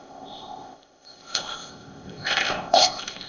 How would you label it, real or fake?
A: fake